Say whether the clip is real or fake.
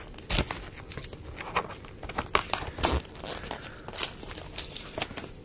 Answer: real